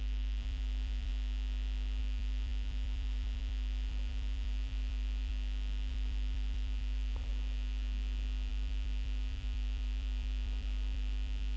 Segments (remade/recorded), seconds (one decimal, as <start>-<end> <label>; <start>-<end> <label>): 0.0-1.1 remade; 1.1-2.0 recorded; 2.0-5.3 remade; 5.3-5.9 recorded; 5.9-7.3 remade; 7.3-8.5 recorded; 8.5-11.6 remade